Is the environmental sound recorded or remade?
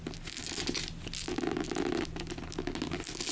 recorded